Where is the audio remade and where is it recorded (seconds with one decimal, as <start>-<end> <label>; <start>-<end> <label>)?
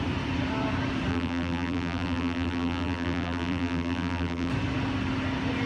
0.0-1.1 recorded; 1.1-4.5 remade; 4.5-5.7 recorded